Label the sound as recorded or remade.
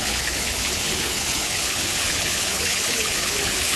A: remade